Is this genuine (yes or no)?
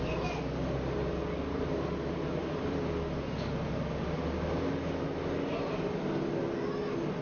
yes